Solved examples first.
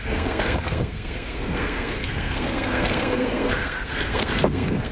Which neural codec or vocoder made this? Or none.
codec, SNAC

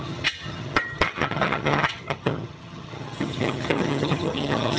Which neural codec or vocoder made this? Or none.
vocoder, HiFi-GAN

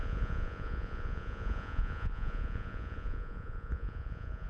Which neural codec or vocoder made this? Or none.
vocoder, Vocos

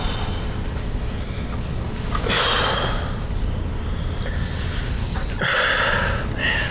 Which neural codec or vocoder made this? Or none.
none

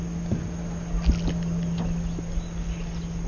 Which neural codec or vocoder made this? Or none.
none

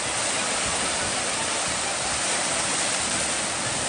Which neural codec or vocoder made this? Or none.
none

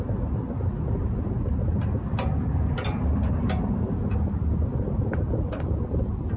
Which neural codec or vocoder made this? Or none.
none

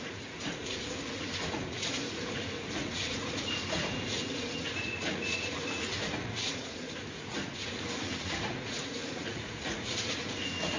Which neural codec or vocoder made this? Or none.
vocoder, Vocos